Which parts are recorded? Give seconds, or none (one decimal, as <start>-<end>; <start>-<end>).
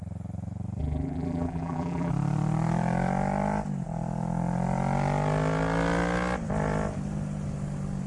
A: 0.0-0.8; 2.1-8.1